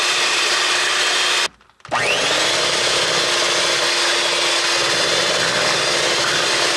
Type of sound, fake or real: real